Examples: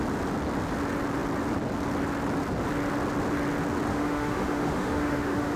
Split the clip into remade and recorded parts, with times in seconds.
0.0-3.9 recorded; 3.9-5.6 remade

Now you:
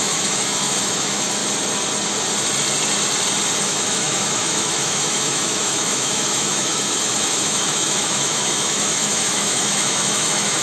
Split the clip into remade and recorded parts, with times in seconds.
0.0-1.4 remade; 1.4-3.6 recorded; 3.6-10.6 remade

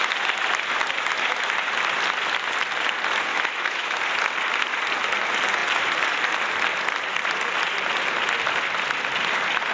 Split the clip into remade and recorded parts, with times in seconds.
0.0-3.3 recorded; 3.3-4.0 remade; 4.0-9.7 recorded

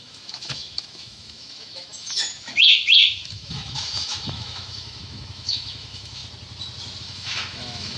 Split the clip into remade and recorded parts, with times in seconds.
0.0-6.2 remade; 6.2-7.0 recorded; 7.0-8.0 remade

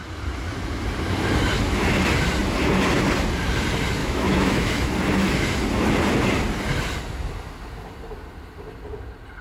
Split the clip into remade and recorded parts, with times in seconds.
0.0-4.0 recorded; 4.0-4.9 remade; 4.9-9.4 recorded

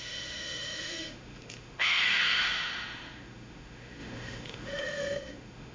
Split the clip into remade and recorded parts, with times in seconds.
0.0-5.7 remade